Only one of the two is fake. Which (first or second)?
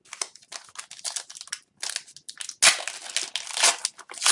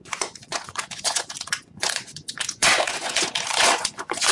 second